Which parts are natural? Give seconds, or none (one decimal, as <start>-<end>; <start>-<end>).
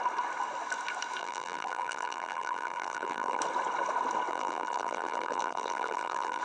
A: 0.0-1.2; 3.4-4.3